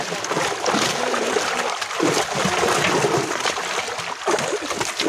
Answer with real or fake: real